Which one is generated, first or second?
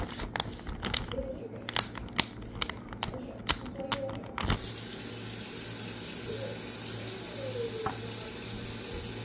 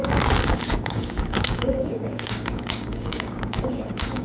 second